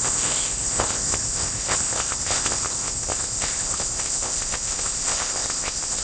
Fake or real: fake